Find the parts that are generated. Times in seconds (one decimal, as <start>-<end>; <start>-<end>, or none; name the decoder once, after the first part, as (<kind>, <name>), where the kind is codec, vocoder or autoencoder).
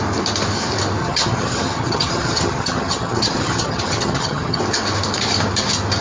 1.0-4.6 (vocoder, HiFi-GAN)